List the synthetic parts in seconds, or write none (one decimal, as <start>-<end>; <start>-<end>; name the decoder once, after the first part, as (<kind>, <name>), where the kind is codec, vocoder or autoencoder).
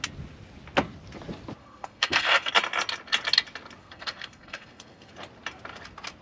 1.6-2.5 (codec, SNAC); 3.8-5.1